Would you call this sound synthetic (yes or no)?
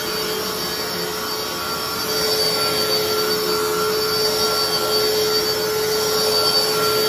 no